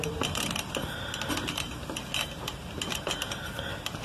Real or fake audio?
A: real